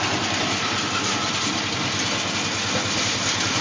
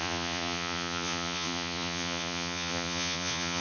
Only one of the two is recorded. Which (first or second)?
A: first